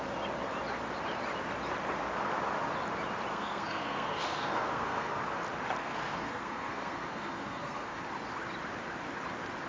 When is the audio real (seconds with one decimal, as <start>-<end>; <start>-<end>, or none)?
0.0-3.3; 5.2-5.8; 8.0-9.7